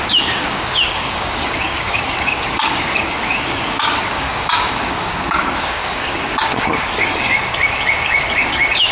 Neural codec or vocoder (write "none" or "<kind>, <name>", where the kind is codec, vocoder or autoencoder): codec, DAC